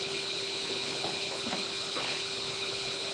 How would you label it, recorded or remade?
remade